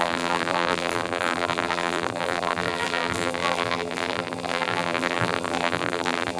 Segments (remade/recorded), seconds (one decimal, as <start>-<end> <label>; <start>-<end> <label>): 0.0-6.4 remade